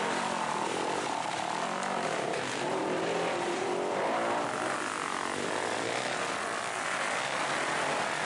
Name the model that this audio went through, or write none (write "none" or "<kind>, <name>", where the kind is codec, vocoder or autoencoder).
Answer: none